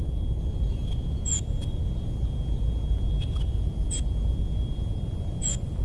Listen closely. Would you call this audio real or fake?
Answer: real